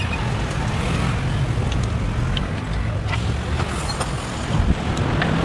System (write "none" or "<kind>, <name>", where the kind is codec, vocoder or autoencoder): none